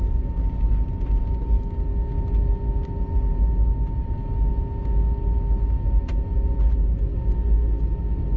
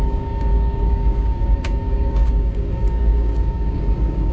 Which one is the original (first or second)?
first